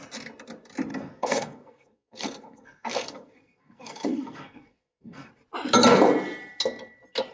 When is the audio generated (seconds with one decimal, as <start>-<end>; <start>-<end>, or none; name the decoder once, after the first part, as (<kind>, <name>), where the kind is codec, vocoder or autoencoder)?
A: 0.9-5.3 (codec, SNAC)